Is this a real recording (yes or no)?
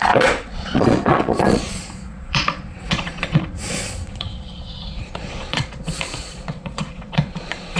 no